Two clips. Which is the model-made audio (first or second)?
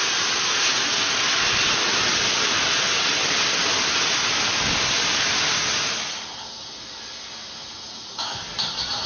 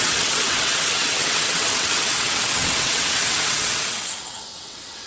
second